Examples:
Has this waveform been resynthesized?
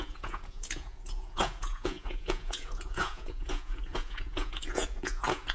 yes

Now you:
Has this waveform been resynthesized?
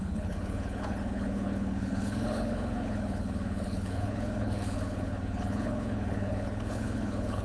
yes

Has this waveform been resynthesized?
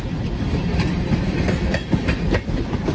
yes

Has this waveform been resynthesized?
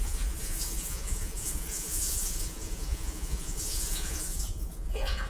yes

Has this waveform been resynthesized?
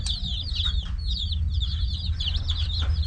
no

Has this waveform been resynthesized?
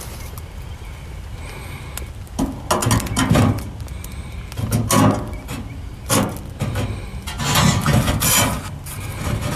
no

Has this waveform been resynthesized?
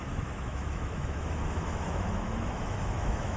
yes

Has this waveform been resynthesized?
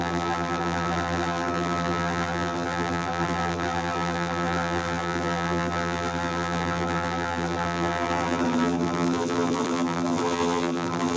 yes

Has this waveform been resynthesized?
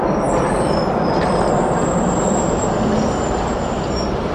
no